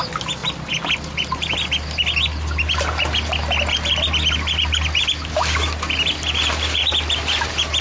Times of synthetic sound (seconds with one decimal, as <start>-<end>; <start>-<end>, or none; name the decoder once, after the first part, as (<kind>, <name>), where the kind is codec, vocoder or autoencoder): none